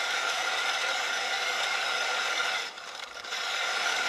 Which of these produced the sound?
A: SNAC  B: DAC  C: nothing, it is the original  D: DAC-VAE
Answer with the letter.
B